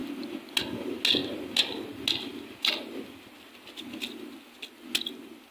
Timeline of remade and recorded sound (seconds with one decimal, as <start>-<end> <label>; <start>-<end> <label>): 0.0-5.5 recorded